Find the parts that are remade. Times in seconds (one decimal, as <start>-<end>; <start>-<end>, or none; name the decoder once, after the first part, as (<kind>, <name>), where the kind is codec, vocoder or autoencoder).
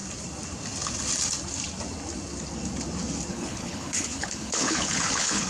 3.3-5.5 (codec, HILCodec)